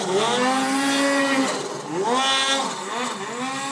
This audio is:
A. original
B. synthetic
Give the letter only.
A